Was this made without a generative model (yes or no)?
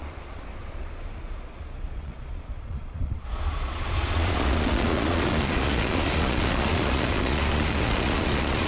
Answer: no